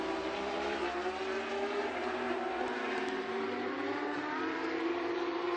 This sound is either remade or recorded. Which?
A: remade